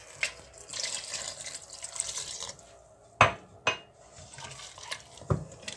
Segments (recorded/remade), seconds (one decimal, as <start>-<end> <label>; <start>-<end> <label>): 0.0-5.8 recorded